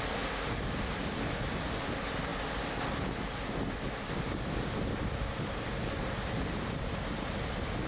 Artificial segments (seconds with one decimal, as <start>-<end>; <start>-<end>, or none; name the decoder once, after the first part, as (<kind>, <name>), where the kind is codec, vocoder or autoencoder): none